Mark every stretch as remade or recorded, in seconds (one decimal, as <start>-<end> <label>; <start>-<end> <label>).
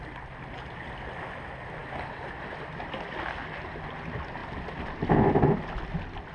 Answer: 0.0-6.3 recorded